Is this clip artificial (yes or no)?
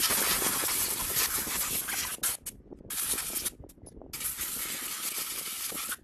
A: no